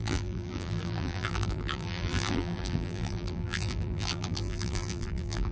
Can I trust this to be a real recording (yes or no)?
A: no